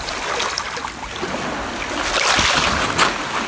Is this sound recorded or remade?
recorded